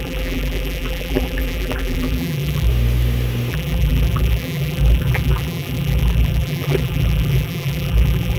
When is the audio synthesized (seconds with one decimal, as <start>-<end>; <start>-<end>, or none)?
0.0-2.7; 3.5-8.4